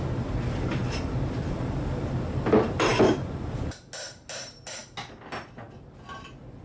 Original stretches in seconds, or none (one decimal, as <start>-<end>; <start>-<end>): 0.0-6.6